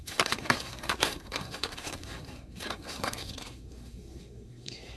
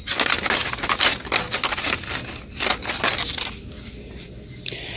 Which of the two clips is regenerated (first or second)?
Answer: first